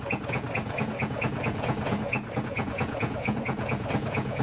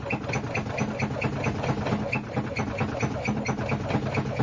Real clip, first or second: second